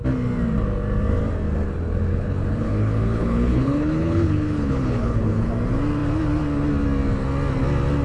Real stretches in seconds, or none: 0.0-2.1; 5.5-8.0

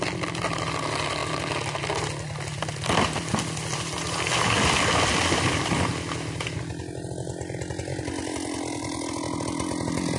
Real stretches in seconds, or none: 0.0-10.2

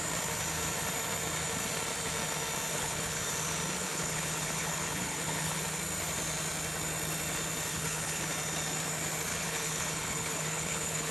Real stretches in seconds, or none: 0.0-2.7; 3.3-3.8; 5.6-7.7; 8.3-9.3

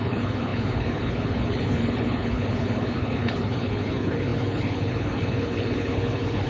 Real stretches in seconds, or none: none

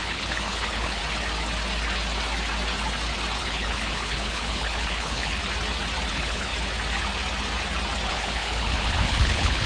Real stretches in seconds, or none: 1.0-3.4; 5.4-6.1; 6.5-8.1

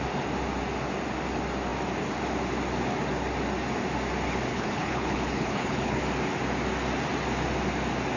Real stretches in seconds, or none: 0.0-4.5; 6.0-8.2